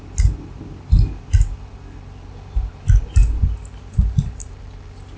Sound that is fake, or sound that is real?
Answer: real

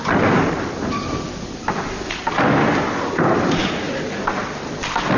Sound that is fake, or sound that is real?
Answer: real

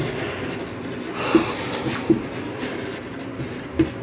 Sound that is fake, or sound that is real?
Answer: real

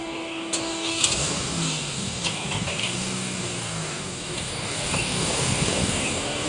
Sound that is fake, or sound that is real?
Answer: fake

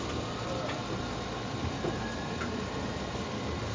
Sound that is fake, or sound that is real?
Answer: real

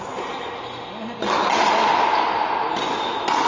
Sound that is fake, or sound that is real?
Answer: real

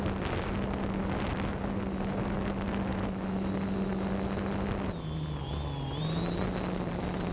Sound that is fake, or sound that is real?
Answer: real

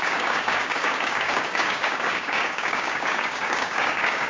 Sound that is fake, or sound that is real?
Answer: fake